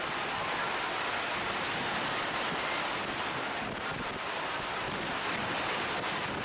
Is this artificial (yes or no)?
no